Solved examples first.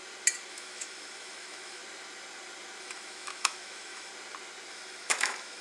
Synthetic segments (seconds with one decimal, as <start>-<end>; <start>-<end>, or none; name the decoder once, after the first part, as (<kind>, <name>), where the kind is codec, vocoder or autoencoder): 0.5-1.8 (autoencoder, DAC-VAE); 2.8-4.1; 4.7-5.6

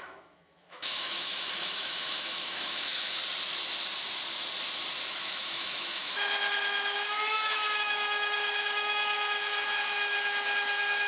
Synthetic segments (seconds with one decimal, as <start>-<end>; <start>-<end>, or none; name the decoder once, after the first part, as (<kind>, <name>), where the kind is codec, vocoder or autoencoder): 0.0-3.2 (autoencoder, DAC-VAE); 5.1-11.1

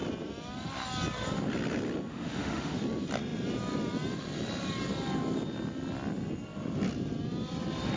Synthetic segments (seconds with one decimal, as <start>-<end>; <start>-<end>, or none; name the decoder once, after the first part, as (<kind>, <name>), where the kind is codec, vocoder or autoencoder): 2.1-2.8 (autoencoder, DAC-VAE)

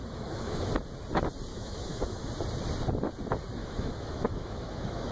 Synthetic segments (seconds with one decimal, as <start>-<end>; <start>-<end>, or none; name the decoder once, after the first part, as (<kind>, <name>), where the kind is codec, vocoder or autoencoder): 0.0-0.7 (autoencoder, DAC-VAE); 1.5-2.3; 3.6-5.1